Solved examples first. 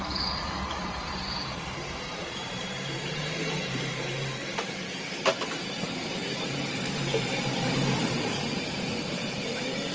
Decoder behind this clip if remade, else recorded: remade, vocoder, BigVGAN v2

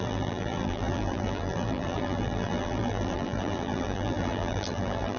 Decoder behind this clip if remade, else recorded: remade, vocoder, BigVGAN v2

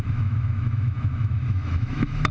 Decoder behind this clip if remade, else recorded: remade, autoencoder, DAC-VAE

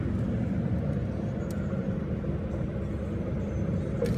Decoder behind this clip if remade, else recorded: recorded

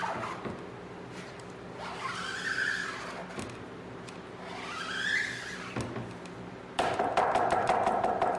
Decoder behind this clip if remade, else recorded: recorded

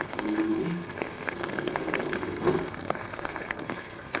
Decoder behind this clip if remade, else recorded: remade, codec, SNAC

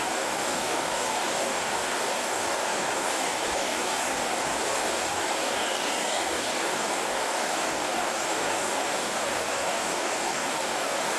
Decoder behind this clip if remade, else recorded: remade, codec, DAC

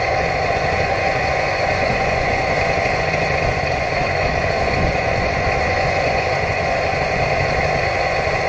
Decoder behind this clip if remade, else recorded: remade, vocoder, Vocos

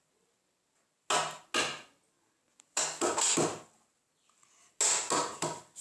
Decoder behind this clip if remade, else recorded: recorded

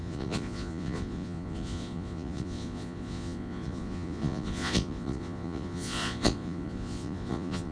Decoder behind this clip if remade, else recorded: remade, vocoder, Vocos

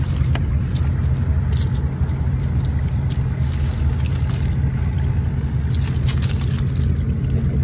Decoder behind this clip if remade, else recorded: recorded